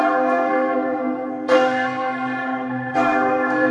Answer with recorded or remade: remade